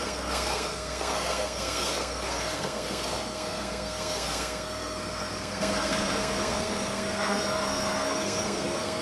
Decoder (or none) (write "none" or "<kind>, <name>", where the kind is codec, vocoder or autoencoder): codec, SNAC